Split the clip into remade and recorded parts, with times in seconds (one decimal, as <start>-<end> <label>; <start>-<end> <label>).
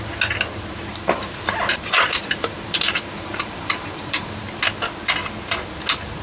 0.0-0.9 recorded; 0.9-4.4 remade; 4.4-6.2 recorded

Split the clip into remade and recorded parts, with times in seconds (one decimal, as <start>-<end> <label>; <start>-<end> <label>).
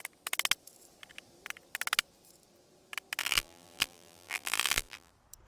0.0-3.2 recorded; 3.2-5.1 remade; 5.1-5.5 recorded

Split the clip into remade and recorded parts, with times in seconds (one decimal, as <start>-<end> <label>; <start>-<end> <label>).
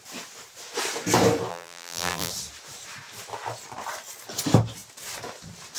0.0-1.5 recorded; 1.5-2.3 remade; 2.3-5.8 recorded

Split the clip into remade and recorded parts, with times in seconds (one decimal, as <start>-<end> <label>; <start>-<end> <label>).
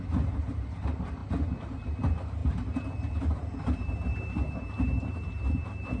0.0-6.0 remade